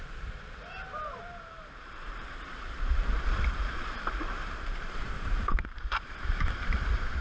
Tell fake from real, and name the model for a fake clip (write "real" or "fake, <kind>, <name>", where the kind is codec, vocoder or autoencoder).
fake, vocoder, BigVGAN v2